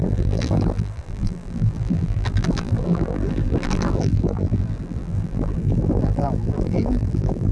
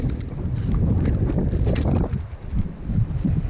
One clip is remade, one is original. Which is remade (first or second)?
first